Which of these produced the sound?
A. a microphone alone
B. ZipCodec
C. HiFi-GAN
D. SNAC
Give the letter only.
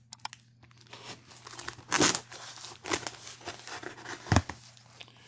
A